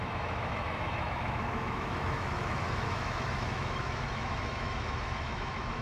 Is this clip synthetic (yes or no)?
yes